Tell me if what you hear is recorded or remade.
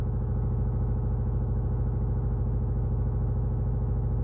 remade